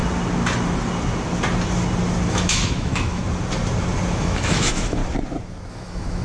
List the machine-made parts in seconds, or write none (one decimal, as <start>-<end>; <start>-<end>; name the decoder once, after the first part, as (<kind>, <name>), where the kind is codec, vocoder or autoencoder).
2.3-3.2 (autoencoder, DAC-VAE); 4.2-5.0; 5.7-6.2